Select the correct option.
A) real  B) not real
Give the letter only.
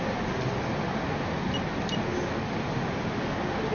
A